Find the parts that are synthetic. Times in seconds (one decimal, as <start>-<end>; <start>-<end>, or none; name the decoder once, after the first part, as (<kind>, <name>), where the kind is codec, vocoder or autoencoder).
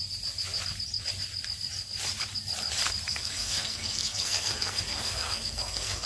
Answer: 3.1-6.1 (codec, SNAC)